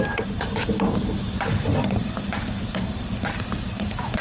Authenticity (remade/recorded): remade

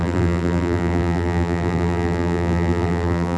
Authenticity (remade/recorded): remade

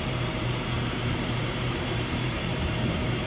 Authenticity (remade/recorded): remade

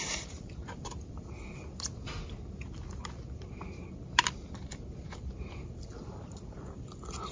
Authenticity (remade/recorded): remade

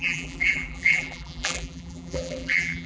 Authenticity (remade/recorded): remade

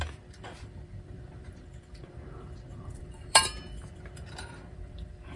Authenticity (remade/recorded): remade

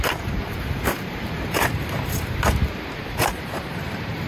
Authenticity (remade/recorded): remade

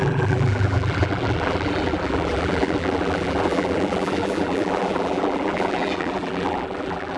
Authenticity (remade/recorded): remade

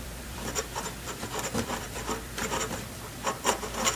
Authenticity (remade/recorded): remade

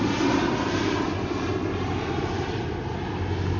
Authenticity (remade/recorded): recorded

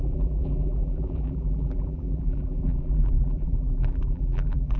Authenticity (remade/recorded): remade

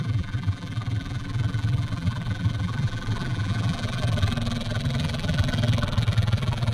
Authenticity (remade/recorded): remade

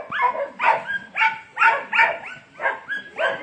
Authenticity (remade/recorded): recorded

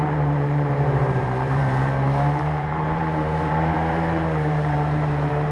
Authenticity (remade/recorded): remade